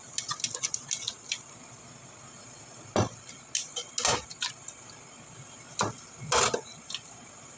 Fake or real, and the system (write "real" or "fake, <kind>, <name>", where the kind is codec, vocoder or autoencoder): real